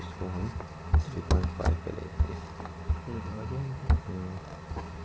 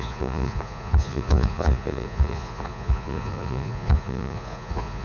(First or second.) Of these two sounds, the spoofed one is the second